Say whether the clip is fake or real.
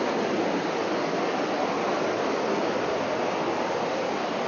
real